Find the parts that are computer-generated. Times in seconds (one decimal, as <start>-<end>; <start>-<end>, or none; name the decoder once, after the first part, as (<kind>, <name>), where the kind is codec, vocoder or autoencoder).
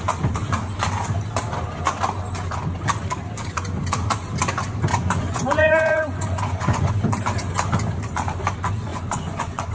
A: 4.9-6.9 (vocoder, Vocos); 8.9-9.7